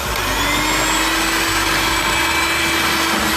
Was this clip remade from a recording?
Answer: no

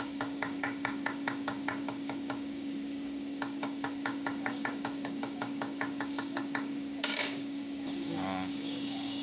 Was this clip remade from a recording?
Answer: yes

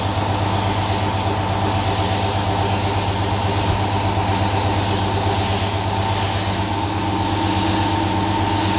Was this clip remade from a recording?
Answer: no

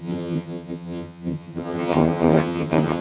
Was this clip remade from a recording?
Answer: yes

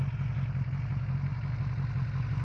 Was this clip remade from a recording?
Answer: no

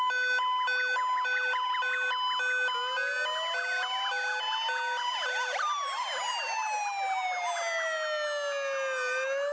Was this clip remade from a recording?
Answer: no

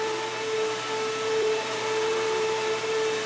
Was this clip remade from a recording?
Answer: yes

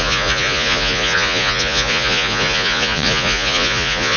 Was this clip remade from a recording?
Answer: yes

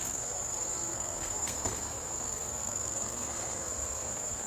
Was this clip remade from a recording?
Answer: yes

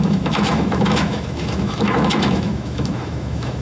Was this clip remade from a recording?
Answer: yes